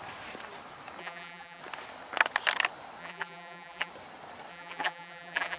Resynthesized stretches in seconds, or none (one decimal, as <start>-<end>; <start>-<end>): 1.0-1.6; 3.0-3.9; 4.5-5.6